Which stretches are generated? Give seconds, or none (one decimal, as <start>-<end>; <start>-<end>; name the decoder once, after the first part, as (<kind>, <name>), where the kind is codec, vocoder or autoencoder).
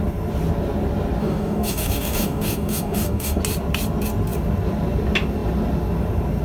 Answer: 1.2-3.4 (codec, DAC)